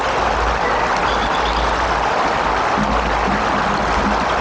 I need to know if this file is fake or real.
real